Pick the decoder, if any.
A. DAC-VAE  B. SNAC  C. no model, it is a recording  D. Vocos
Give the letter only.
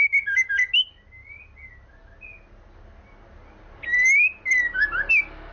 C